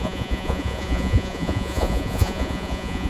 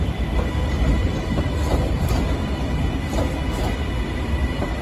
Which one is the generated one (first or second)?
first